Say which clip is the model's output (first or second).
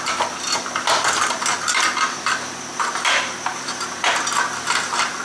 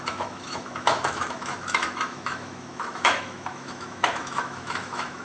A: second